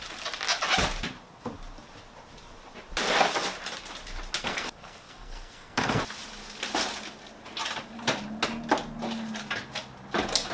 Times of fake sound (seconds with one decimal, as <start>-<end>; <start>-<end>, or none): 4.4-6.0